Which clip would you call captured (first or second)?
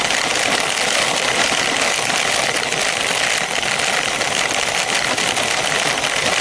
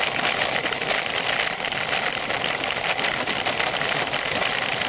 first